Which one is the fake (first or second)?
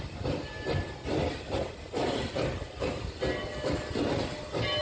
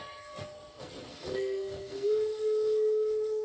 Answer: second